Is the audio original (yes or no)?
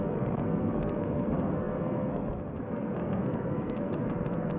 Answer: no